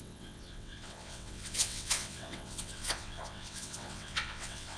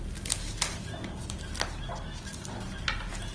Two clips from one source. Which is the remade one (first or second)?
first